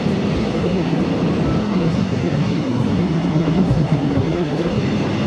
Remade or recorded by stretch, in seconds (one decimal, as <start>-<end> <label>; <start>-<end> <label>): 0.0-0.4 recorded; 0.4-1.0 remade; 1.0-1.6 recorded; 1.6-4.8 remade; 4.8-5.3 recorded